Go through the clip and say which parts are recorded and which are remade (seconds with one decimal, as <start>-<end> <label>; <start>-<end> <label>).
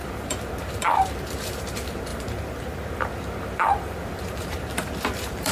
0.0-5.5 remade